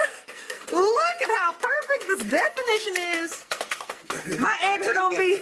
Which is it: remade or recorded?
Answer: remade